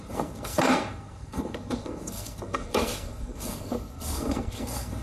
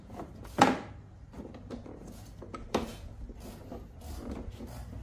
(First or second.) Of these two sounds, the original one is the second